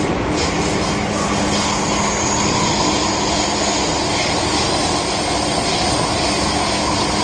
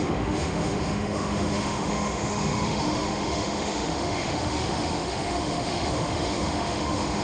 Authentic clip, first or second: first